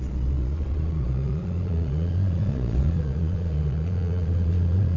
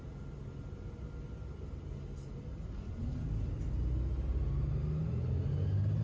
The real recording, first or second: second